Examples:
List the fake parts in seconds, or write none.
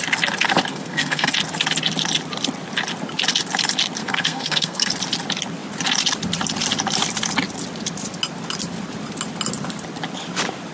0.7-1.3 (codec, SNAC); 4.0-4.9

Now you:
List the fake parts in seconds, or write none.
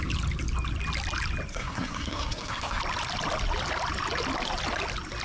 1.5-2.8 (codec, SNAC)